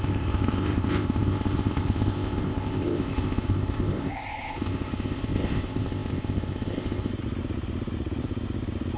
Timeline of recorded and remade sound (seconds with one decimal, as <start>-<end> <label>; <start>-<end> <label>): 0.0-7.1 remade; 7.1-9.0 recorded